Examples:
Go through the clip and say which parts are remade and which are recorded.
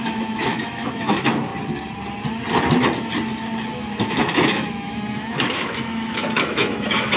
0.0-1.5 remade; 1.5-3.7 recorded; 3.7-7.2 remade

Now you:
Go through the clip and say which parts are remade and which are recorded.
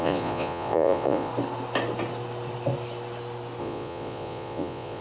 0.0-1.3 remade; 1.3-3.6 recorded; 3.6-5.0 remade